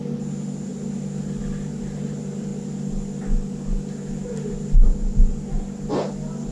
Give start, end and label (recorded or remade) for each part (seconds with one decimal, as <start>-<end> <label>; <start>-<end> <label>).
0.0-6.5 recorded